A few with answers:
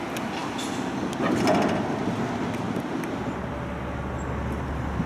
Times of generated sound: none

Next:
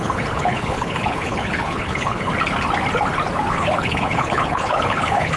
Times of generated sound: 0.0-2.3 (codec, HILCodec); 3.5-5.4

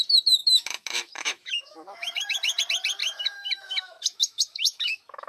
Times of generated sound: 0.4-2.6 (autoencoder, DAC-VAE); 3.0-5.3